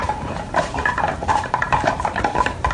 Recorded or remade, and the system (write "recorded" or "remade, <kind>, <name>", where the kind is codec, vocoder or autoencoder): remade, vocoder, BigVGAN v2